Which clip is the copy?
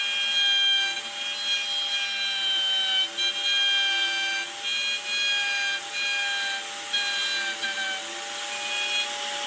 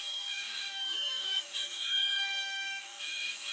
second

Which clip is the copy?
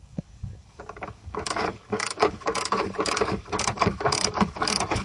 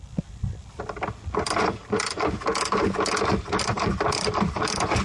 first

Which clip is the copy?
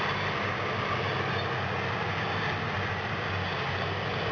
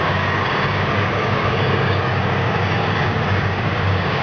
second